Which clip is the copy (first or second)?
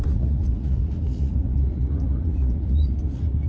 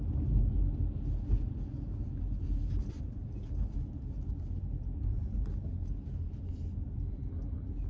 first